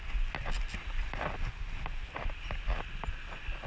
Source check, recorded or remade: recorded